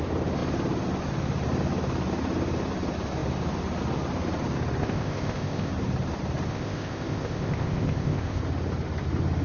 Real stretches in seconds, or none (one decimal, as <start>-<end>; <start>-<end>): 0.0-4.8; 5.7-6.5; 8.4-9.4